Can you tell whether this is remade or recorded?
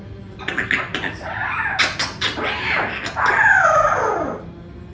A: recorded